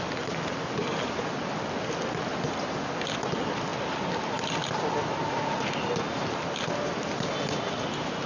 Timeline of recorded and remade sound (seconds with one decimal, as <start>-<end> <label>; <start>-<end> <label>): 0.0-8.3 recorded